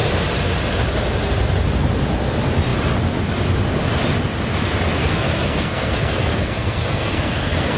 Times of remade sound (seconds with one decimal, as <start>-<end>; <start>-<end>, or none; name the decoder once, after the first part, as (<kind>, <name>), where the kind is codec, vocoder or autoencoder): 5.0-7.8 (codec, SNAC)